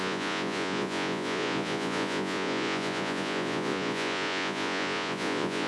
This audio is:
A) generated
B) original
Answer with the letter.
A